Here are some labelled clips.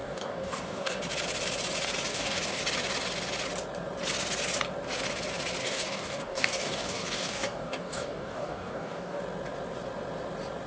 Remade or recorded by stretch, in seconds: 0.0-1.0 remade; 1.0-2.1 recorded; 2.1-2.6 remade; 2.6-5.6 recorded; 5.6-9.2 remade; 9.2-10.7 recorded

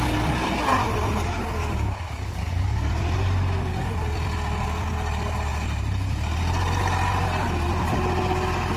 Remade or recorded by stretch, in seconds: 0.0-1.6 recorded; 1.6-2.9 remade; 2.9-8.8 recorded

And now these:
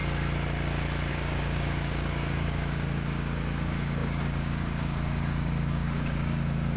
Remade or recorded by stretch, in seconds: 0.0-1.1 recorded; 1.1-6.8 remade

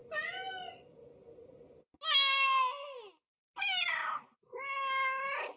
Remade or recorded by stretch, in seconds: 0.0-5.6 recorded

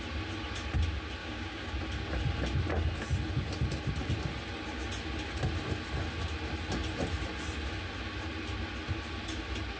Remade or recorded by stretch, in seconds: 0.0-1.2 recorded; 1.2-1.7 remade; 1.7-9.8 recorded

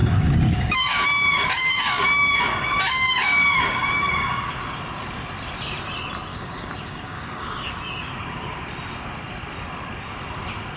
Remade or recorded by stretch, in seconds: 0.0-4.5 remade; 4.5-6.3 recorded; 6.3-7.7 remade; 7.7-10.8 recorded